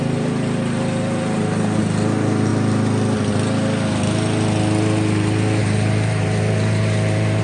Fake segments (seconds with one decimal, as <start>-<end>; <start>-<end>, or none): 0.0-2.5; 5.6-7.4